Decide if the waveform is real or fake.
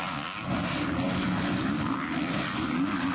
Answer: real